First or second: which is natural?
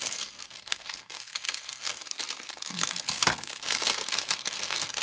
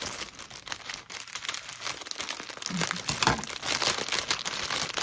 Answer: second